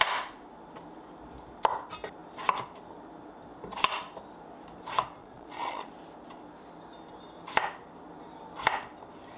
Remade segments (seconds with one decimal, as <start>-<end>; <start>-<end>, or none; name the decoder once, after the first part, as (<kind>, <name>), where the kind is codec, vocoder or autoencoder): 5.2-5.9 (vocoder, Vocos)